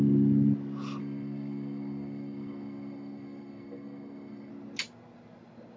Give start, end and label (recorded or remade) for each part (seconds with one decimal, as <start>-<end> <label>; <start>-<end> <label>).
0.0-1.0 recorded; 1.0-4.5 remade; 4.5-5.8 recorded